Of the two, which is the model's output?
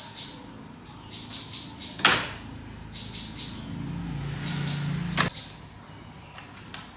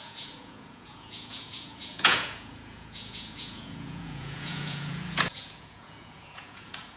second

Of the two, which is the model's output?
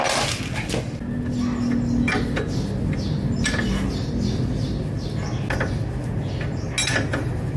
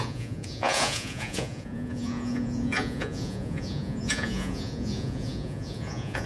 second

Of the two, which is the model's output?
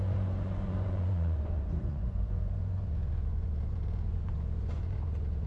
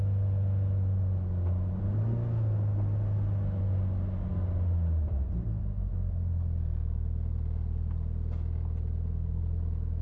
first